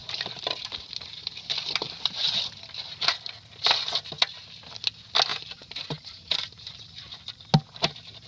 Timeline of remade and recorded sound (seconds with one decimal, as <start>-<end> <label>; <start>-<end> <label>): 0.0-2.2 remade; 2.2-5.3 recorded; 5.3-6.8 remade; 6.8-8.3 recorded